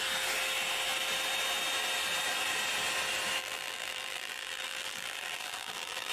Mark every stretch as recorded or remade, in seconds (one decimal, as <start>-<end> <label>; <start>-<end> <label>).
0.0-3.4 recorded; 3.4-6.1 remade